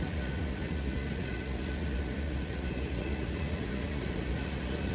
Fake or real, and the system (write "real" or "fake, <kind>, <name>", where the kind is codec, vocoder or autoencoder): fake, vocoder, Vocos